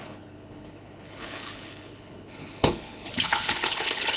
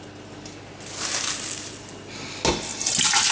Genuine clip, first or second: second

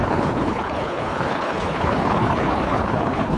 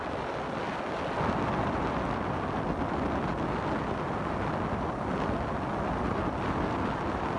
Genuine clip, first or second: second